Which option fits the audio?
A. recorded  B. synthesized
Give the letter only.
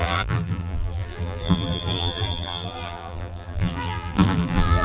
B